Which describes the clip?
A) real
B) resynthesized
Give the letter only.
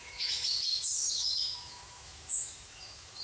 B